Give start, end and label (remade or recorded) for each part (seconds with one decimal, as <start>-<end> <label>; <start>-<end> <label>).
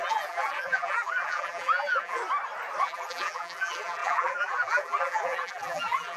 0.0-2.2 remade; 2.2-2.8 recorded; 2.8-6.2 remade